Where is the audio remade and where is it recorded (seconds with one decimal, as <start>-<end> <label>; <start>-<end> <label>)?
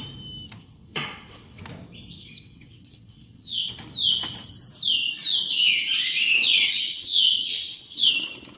0.0-0.6 recorded; 0.6-1.6 remade; 1.6-2.2 recorded; 2.2-3.7 remade; 3.7-5.5 recorded; 5.5-8.1 remade; 8.1-8.6 recorded